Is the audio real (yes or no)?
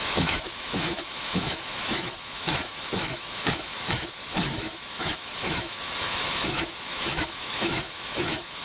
no